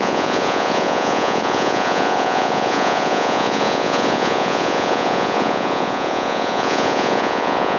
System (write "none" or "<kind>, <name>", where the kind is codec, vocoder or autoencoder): vocoder, Vocos